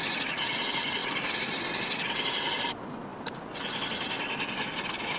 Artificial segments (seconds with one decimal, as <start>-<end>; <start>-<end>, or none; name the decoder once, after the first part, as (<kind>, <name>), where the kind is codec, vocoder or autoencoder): 1.0-2.1 (vocoder, BigVGAN v2)